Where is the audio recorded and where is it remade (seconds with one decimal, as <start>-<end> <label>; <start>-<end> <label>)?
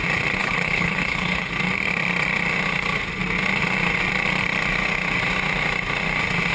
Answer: 0.0-0.4 recorded; 0.4-1.5 remade; 1.5-6.5 recorded